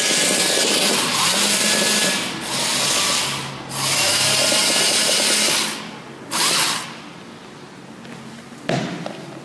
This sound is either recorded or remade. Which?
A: recorded